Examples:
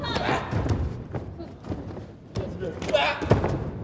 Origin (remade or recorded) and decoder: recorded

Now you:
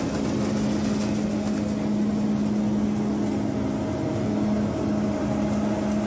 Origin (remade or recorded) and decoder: recorded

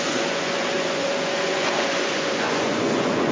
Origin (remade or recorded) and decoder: remade, vocoder, Vocos